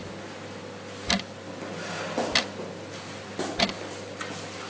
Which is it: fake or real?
real